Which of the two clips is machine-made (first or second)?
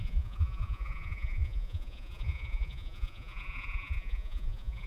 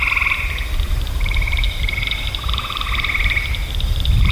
first